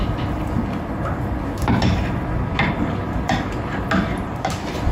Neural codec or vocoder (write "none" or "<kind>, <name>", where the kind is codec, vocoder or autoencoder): none